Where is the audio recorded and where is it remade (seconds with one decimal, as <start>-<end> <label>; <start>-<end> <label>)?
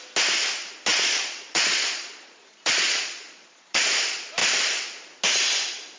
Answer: 0.0-0.9 recorded; 0.9-3.9 remade; 3.9-6.0 recorded